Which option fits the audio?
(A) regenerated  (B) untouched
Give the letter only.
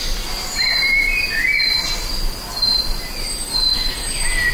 B